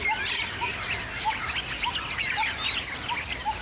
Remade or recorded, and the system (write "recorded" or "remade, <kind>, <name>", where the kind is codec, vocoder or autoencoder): recorded